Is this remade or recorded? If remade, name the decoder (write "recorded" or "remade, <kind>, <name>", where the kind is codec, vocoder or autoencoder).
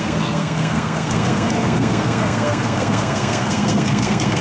remade, codec, SNAC